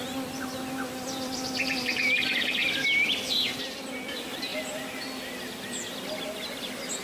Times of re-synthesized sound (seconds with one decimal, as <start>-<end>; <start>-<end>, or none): none